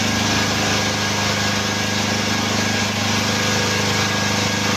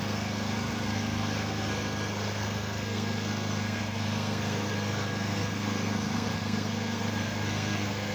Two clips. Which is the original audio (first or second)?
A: first